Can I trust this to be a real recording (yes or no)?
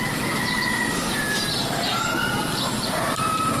no